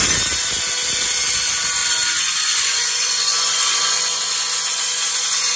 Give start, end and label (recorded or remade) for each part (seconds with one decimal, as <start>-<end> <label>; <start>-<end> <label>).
0.0-1.8 recorded; 1.8-5.6 remade

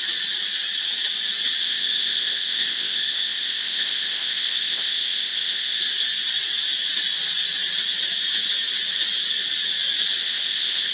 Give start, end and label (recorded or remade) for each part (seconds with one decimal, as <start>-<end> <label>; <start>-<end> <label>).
0.0-1.6 recorded; 1.6-5.8 remade; 5.8-10.2 recorded; 10.2-10.9 remade

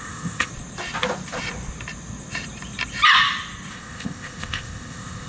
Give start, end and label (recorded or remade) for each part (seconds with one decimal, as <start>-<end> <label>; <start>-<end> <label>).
0.0-0.5 remade; 0.5-3.7 recorded; 3.7-5.3 remade

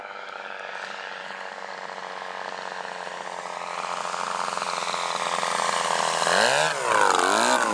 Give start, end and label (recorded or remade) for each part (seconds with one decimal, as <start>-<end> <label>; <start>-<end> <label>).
0.0-1.7 remade; 1.7-7.7 recorded

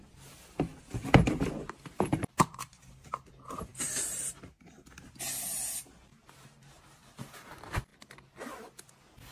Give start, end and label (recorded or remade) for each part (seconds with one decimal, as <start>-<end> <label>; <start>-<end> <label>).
0.0-3.7 recorded; 3.7-4.3 remade; 4.3-9.3 recorded

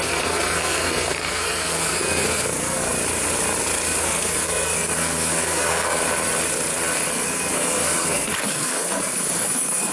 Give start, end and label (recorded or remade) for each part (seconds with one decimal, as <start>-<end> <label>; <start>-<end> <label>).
0.0-2.9 remade; 2.9-4.0 recorded; 4.0-6.0 remade; 6.0-7.1 recorded; 7.1-9.9 remade

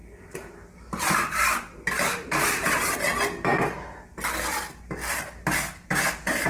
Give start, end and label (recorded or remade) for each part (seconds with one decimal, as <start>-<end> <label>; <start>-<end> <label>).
0.0-6.5 recorded

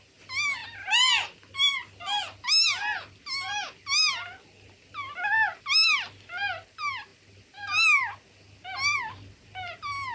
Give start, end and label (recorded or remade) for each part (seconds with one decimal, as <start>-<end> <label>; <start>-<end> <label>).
0.0-10.1 recorded